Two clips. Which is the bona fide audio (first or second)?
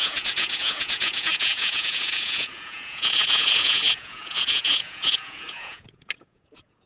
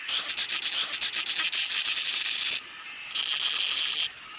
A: second